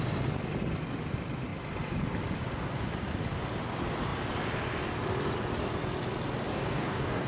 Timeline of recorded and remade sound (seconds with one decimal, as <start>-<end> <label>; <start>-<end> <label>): 0.0-6.5 recorded; 6.5-7.3 remade